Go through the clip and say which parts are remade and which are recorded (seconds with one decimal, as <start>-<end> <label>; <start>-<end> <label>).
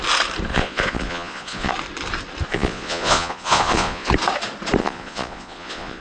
0.0-0.5 recorded; 0.5-1.7 remade; 1.7-2.5 recorded; 2.5-4.1 remade; 4.1-4.8 recorded; 4.8-6.0 remade